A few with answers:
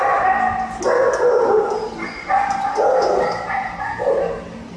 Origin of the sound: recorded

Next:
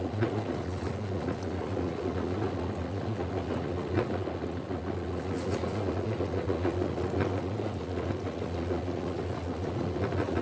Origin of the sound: remade